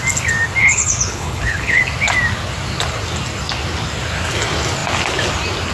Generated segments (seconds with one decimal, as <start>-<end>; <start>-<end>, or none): 0.6-1.8